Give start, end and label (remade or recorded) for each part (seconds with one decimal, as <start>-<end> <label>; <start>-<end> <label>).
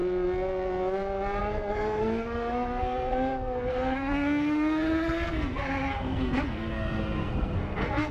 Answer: 0.0-1.4 recorded; 1.4-8.1 remade